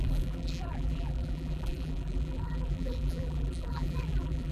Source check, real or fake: fake